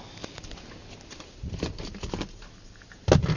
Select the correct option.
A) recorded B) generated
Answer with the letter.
A